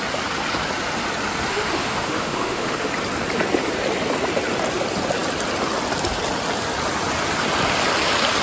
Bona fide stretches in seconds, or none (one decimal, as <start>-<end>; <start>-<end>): 0.0-1.5; 2.9-8.4